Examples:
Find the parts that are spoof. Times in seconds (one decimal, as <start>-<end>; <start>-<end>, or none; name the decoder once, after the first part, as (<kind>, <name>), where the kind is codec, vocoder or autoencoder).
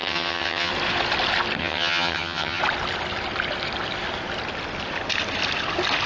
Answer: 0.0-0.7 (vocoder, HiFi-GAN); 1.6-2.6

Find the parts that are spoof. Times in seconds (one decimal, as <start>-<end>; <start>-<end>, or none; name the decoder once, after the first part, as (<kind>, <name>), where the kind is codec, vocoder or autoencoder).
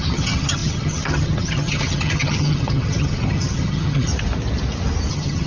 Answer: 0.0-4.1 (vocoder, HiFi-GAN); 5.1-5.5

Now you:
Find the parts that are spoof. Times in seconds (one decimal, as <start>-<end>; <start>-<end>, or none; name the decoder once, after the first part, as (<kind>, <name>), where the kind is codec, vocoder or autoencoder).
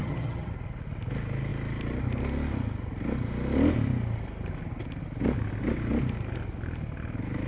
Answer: 0.0-0.5 (vocoder, HiFi-GAN)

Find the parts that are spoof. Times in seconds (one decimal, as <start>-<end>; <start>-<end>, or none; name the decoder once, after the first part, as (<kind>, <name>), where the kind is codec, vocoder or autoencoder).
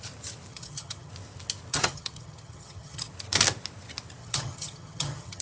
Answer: 0.5-1.1 (vocoder, HiFi-GAN); 1.7-3.1; 4.2-5.4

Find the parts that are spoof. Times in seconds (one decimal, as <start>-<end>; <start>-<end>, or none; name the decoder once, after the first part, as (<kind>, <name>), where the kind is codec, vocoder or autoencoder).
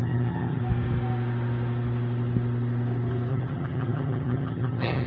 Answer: 0.0-0.6 (vocoder, HiFi-GAN); 3.3-5.1